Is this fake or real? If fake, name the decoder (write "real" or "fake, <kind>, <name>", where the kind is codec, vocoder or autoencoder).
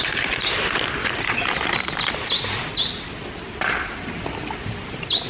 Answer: real